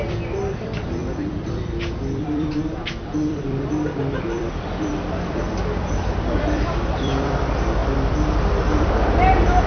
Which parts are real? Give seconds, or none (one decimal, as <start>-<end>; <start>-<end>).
none